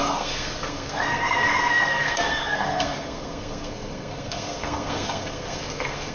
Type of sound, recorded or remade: remade